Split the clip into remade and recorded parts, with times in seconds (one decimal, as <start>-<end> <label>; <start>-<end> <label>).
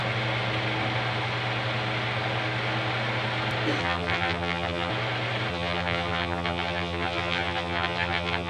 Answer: 0.0-3.8 recorded; 3.8-4.9 remade; 4.9-5.5 recorded; 5.5-8.5 remade